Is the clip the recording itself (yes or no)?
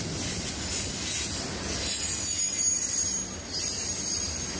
yes